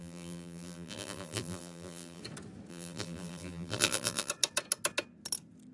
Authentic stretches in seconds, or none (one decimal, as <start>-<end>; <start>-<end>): 2.2-2.7; 4.3-5.7

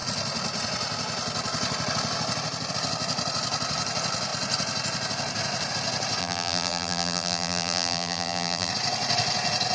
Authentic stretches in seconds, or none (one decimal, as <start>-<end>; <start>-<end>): 0.0-6.2; 8.7-9.7

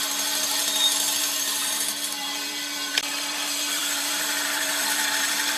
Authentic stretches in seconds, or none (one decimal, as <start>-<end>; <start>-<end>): 0.6-1.2

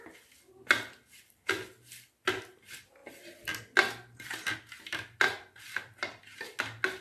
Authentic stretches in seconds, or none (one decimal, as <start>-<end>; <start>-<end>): 0.0-7.0

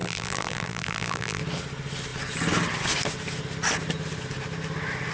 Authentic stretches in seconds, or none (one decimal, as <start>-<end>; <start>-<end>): 1.4-5.1

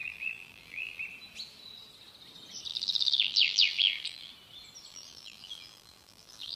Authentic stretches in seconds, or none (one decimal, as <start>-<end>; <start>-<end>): 1.0-2.7; 4.3-4.9

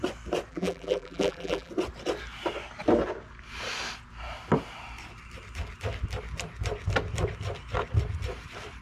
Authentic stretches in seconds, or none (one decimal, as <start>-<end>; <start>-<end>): 0.0-0.5; 1.7-8.8